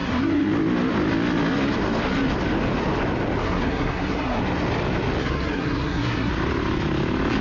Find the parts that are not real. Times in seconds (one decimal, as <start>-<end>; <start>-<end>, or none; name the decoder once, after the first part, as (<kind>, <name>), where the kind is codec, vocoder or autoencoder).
0.0-0.5 (codec, SNAC); 3.4-4.4; 5.2-6.3